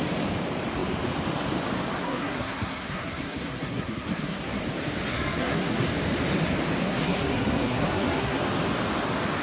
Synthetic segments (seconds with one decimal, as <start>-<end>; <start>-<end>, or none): 2.0-4.6; 5.1-5.9; 6.8-8.4